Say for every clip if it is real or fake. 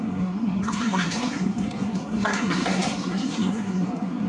fake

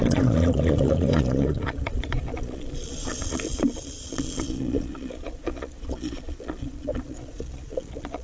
fake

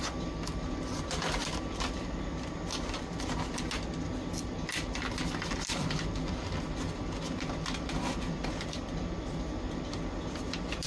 real